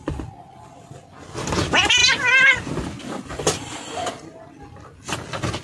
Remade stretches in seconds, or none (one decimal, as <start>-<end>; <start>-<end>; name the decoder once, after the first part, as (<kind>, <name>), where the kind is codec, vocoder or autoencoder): none